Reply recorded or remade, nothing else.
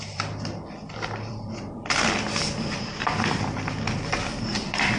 remade